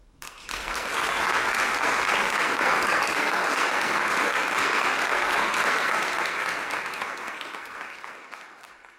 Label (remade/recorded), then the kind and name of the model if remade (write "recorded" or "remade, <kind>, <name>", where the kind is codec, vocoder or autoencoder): remade, codec, SNAC